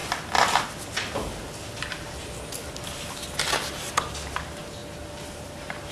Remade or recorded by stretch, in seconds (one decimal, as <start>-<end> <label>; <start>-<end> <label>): 0.0-3.5 recorded; 3.5-4.8 remade; 4.8-5.3 recorded; 5.3-5.9 remade